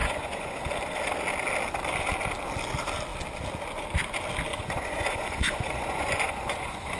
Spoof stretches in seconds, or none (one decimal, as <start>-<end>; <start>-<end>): 0.0-0.6; 4.5-7.0